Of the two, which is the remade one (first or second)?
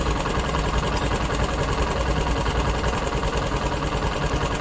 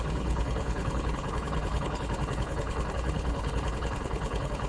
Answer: second